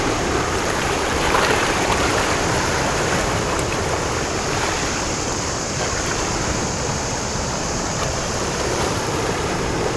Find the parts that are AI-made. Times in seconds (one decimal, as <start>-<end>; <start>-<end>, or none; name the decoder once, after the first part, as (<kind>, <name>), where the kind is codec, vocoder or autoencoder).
0.0-2.1 (vocoder, BigVGAN v2); 4.9-10.0